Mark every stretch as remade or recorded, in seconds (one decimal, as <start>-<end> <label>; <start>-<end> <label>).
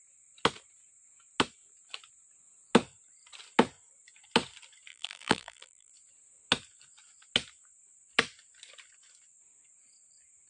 0.0-4.9 recorded; 4.9-5.9 remade; 5.9-10.5 recorded